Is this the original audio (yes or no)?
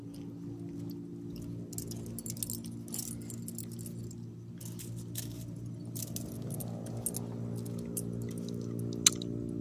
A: yes